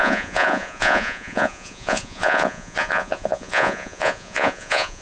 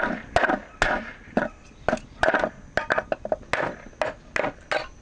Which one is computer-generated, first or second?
first